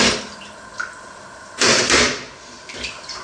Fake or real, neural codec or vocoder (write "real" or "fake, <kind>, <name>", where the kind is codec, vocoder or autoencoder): fake, vocoder, BigVGAN v2